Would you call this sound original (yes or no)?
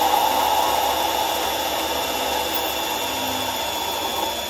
yes